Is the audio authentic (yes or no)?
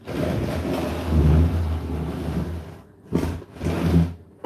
yes